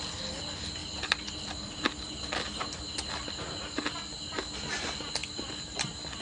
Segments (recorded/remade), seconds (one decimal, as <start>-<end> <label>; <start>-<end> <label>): 0.0-6.2 recorded